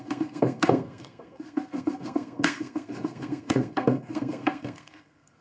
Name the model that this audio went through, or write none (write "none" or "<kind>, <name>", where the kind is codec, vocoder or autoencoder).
codec, SNAC